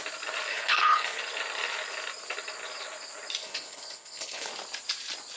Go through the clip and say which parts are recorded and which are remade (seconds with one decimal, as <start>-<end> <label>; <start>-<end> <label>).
0.0-0.5 recorded; 0.5-1.2 remade; 1.2-3.4 recorded; 3.4-4.5 remade; 4.5-5.4 recorded